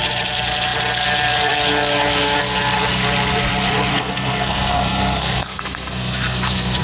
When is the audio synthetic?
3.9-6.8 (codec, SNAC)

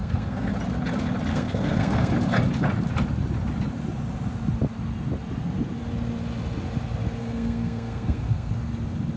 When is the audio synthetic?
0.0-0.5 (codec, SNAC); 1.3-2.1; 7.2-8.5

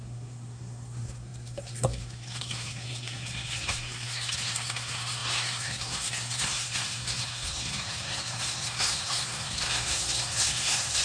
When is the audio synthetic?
0.0-11.0 (codec, SNAC)